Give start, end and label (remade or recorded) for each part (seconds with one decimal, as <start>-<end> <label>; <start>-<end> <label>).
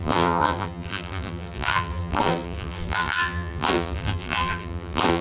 0.0-5.2 remade